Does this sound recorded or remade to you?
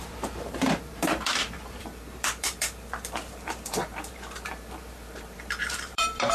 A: remade